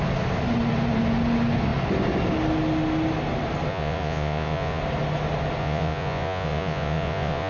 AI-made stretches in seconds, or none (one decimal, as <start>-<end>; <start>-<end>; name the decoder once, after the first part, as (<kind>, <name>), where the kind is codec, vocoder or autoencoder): 3.7-4.8 (vocoder, Vocos); 5.6-7.5